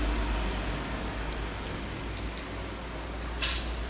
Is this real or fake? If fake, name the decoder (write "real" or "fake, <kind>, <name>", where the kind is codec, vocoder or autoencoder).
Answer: real